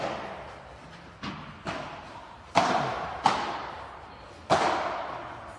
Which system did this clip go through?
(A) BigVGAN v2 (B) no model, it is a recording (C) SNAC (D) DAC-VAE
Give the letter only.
B